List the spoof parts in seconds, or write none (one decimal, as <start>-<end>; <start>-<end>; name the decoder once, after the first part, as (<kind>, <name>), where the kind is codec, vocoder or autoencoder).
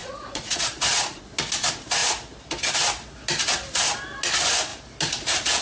0.0-1.2 (vocoder, Vocos)